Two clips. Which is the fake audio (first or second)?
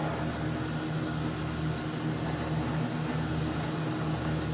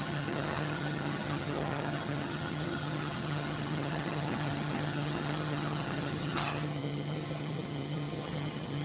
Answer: second